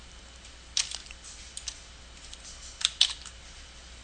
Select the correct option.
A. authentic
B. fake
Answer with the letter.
A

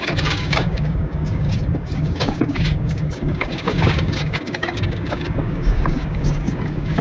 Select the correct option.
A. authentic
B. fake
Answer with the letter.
B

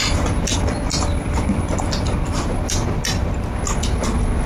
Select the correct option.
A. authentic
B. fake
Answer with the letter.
A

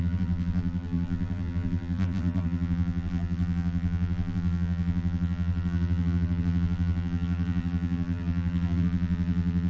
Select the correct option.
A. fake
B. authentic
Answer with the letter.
A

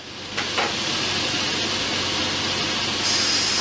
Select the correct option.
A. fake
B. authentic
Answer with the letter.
B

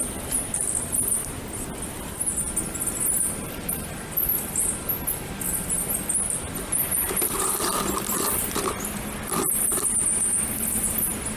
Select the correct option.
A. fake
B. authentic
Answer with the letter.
B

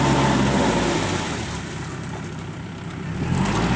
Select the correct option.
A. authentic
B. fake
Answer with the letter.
A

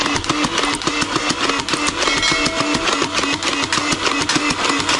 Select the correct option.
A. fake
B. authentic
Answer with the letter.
B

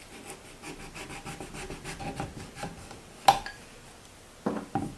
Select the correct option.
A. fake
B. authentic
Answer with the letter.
B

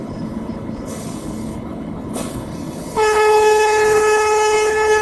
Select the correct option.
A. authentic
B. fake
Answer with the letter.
B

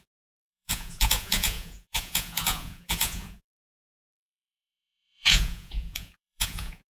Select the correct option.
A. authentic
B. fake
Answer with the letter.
B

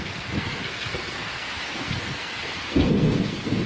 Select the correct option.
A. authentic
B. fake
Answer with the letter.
B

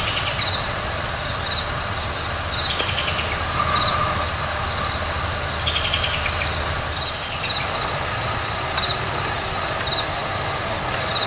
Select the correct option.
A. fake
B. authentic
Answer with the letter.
B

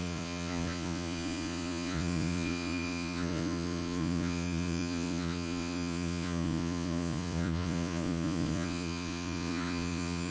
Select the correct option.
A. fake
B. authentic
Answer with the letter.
A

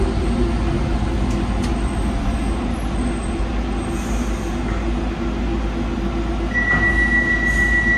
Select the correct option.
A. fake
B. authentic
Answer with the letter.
B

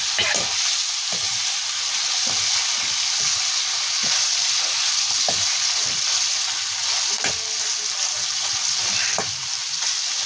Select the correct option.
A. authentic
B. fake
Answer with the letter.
A